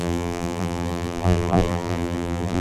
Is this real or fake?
fake